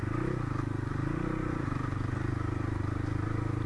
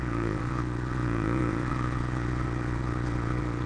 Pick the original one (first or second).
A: first